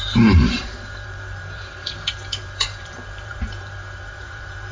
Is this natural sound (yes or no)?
no